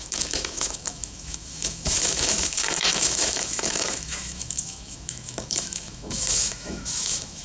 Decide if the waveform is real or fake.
fake